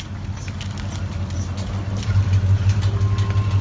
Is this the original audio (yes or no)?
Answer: yes